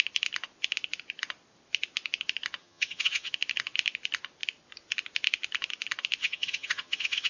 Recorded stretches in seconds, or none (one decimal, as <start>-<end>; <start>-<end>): 0.0-2.6; 3.3-6.2